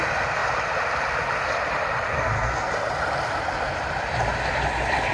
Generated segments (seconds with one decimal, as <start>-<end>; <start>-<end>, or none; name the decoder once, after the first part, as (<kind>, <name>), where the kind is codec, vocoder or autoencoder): 2.1-2.7 (codec, SNAC)